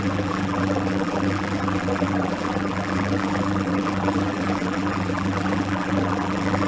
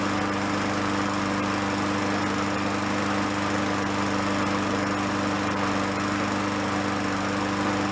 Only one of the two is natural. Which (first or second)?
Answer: second